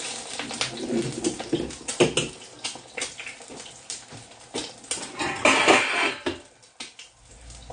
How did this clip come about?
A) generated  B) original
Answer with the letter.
B